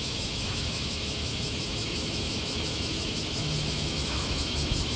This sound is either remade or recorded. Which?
remade